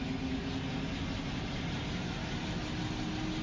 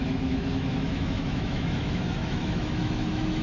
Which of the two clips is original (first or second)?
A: first